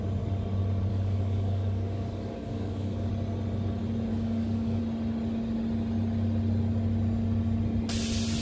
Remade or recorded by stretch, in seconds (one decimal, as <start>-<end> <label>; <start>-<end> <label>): 0.0-0.9 recorded; 0.9-3.1 remade; 3.1-4.1 recorded; 4.1-4.8 remade; 4.8-8.4 recorded